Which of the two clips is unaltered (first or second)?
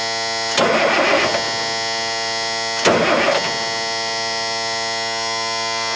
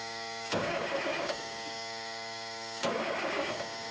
first